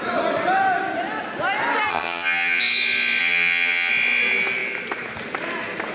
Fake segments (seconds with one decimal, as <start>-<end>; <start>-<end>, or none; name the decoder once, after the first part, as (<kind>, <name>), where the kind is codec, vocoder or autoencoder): 1.9-2.6 (vocoder, HiFi-GAN); 3.2-3.9